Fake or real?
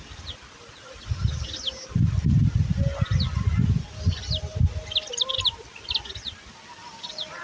real